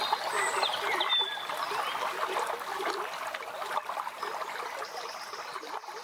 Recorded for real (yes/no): yes